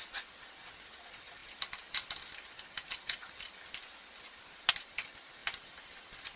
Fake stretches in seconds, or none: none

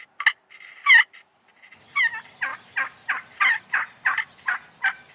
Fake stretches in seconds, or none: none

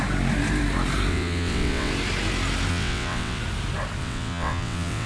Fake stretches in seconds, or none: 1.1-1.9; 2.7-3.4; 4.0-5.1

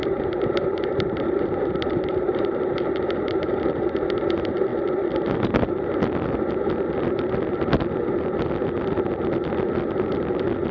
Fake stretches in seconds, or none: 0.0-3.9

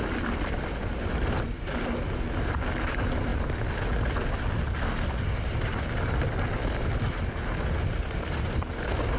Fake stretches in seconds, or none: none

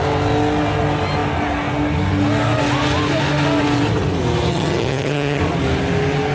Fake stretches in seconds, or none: 4.5-5.4

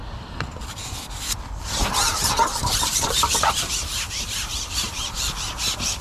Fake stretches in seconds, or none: 2.1-5.1